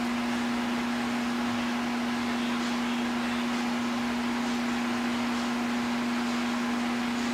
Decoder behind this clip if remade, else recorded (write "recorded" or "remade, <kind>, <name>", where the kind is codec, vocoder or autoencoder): recorded